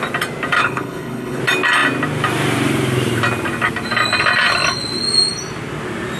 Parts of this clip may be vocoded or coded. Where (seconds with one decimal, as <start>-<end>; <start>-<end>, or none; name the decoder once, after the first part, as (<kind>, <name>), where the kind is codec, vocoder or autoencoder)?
0.6-1.4 (codec, HILCodec)